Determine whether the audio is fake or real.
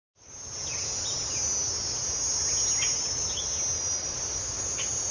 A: real